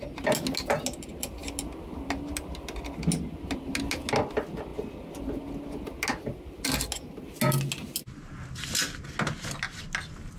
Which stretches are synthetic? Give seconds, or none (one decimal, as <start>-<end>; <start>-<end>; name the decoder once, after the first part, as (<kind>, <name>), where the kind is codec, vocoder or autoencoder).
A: none